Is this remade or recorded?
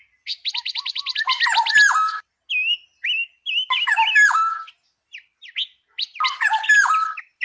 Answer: recorded